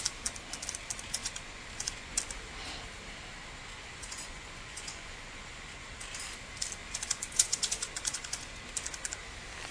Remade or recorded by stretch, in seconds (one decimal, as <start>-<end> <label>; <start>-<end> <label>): 0.0-1.2 recorded; 1.2-2.2 remade; 2.2-3.6 recorded; 3.6-5.9 remade; 5.9-6.8 recorded; 6.8-8.6 remade; 8.6-9.7 recorded